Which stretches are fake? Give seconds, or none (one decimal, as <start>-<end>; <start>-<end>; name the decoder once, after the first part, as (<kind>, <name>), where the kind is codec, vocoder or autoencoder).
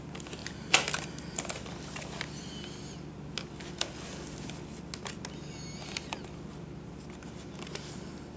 none